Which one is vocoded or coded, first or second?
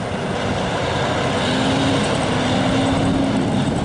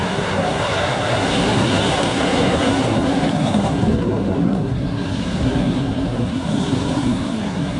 second